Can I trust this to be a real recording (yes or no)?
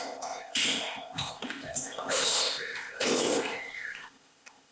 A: no